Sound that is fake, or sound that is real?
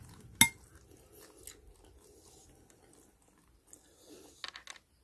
real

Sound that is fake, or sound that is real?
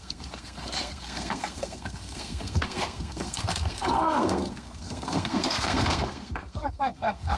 fake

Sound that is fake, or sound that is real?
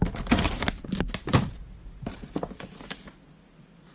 real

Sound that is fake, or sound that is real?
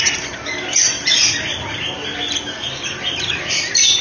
real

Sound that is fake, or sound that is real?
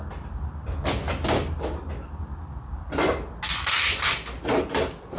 real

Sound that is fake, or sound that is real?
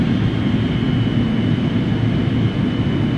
real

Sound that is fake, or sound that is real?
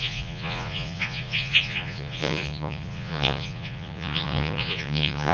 fake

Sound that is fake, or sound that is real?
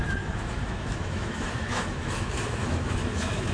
fake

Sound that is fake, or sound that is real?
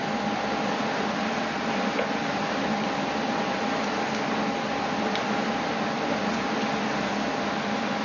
real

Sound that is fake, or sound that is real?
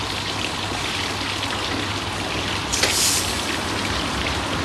real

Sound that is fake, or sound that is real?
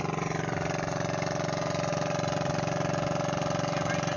real